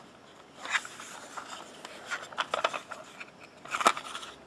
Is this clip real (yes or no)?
yes